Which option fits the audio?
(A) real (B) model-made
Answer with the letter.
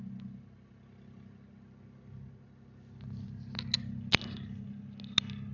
A